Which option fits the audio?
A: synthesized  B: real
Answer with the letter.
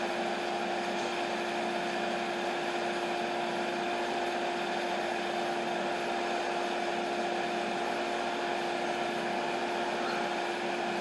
B